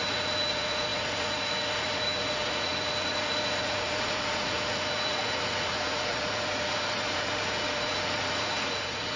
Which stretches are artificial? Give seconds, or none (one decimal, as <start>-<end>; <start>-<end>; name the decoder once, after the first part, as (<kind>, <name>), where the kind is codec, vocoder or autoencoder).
0.0-9.2 (vocoder, Vocos)